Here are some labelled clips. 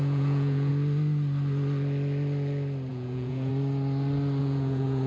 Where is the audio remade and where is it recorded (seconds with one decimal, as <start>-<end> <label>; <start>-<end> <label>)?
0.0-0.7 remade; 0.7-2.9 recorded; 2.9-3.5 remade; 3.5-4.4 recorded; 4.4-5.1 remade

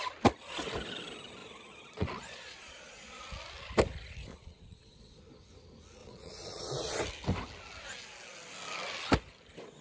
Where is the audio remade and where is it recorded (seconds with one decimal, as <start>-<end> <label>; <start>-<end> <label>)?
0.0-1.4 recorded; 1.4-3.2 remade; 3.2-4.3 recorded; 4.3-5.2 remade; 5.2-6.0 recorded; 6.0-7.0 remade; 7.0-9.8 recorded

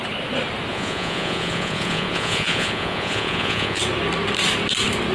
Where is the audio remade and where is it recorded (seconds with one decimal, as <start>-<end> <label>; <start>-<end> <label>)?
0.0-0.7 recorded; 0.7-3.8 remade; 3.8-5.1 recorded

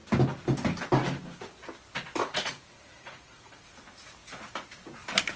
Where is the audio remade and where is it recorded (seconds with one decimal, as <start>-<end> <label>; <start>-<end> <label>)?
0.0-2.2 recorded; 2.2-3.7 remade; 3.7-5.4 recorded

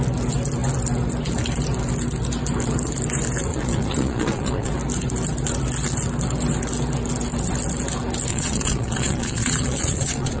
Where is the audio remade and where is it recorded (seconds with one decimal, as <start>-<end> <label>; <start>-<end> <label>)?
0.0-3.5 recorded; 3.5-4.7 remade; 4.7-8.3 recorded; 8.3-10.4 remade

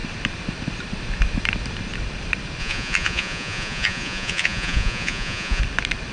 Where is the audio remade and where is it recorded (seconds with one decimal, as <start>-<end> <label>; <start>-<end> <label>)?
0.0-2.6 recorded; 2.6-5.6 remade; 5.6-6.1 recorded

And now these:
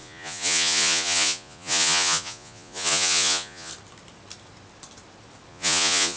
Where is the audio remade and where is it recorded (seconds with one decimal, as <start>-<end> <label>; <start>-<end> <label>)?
0.0-3.7 remade; 3.7-5.5 recorded; 5.5-6.2 remade